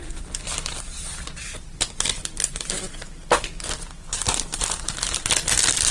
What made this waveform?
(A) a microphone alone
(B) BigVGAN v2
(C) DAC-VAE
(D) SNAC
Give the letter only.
A